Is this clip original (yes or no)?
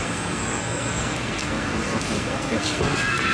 no